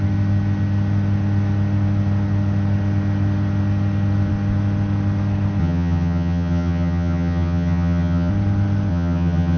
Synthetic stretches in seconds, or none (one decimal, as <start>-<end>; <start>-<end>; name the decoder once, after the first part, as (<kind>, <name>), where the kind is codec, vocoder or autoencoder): 5.6-8.3 (vocoder, HiFi-GAN); 8.9-9.6